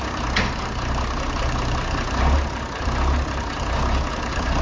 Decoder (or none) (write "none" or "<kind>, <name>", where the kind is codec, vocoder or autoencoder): none